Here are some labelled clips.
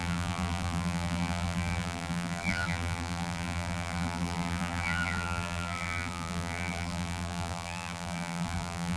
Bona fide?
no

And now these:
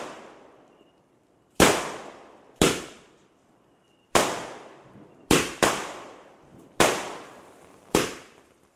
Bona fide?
no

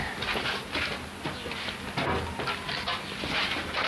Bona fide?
yes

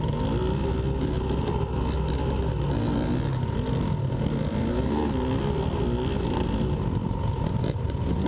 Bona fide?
yes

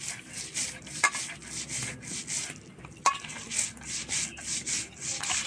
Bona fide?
yes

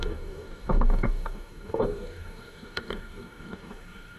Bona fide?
no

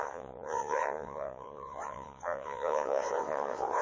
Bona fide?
no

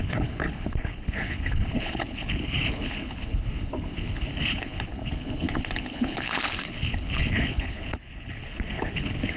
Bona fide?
no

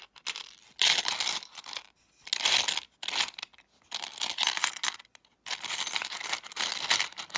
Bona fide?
yes